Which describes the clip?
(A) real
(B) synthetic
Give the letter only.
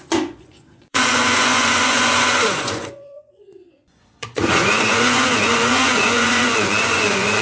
B